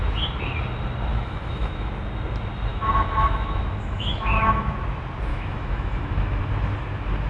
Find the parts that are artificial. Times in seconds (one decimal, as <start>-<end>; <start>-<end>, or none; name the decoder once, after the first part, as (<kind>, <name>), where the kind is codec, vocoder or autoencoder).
1.1-1.9 (autoencoder, DAC-VAE); 2.7-4.7; 5.3-6.4